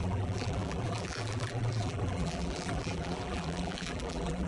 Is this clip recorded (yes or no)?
no